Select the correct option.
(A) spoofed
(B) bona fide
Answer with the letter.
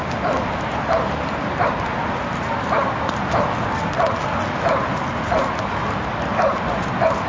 B